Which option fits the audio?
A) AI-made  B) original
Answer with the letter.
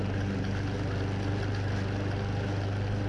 B